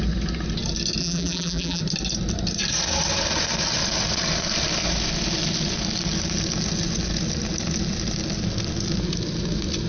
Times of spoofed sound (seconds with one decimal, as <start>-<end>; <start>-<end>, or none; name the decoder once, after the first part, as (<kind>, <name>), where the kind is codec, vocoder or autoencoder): 1.0-1.8 (vocoder, BigVGAN v2)